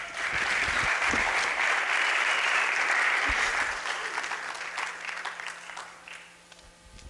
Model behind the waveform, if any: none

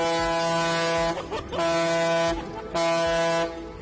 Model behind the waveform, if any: none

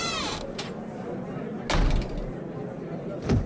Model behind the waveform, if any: none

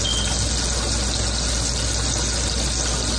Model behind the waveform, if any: none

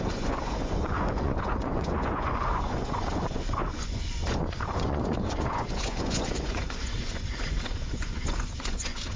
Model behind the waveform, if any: vocoder, Vocos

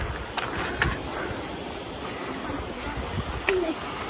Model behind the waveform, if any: none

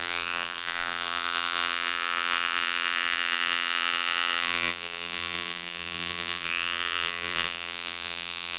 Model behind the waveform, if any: vocoder, BigVGAN v2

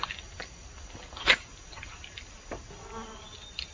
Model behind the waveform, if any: none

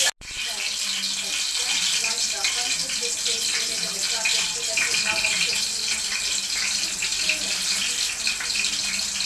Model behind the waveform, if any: none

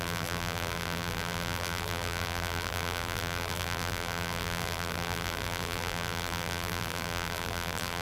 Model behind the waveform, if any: vocoder, BigVGAN v2